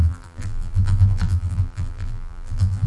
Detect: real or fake fake